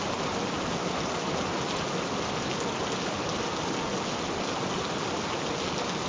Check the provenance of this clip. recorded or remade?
recorded